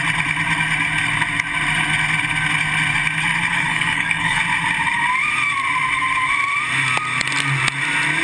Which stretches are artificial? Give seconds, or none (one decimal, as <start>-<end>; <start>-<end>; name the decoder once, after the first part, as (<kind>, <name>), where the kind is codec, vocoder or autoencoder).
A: 3.5-4.4 (codec, DAC)